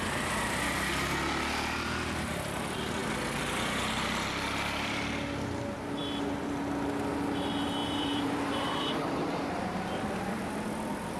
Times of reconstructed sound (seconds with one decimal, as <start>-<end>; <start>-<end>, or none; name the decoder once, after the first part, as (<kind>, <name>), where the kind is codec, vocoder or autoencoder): 7.8-10.5 (vocoder, BigVGAN v2)